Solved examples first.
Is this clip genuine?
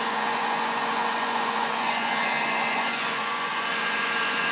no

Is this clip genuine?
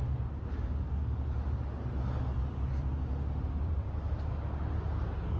yes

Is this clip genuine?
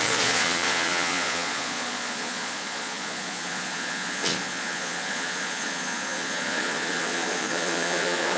no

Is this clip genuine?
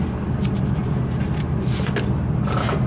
yes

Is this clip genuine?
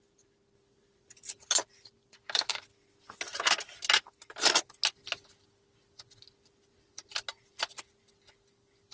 yes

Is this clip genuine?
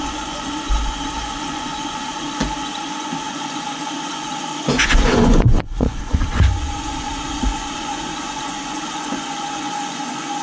no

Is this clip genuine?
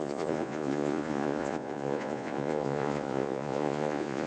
no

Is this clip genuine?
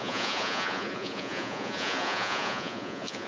no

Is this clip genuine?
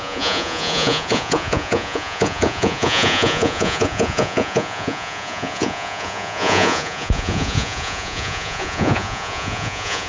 no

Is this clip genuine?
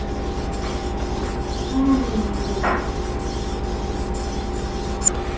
yes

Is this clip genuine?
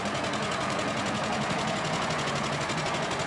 no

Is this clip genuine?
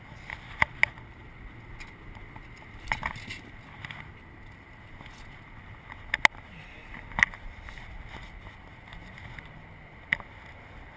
yes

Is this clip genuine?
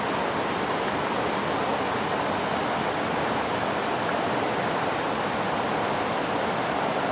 yes